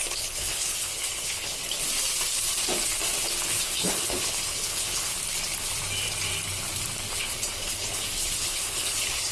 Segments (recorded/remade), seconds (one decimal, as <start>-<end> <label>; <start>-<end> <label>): 0.0-1.6 remade; 1.6-3.5 recorded; 3.5-5.1 remade; 5.1-7.1 recorded; 7.1-9.3 remade